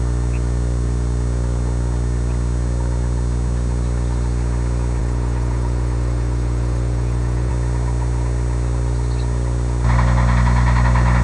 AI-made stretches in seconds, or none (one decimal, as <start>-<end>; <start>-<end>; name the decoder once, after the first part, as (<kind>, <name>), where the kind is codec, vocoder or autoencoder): 5.0-7.5 (vocoder, Vocos)